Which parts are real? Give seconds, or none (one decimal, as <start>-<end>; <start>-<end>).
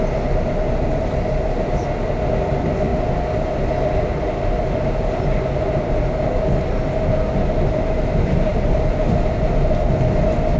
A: 0.0-10.6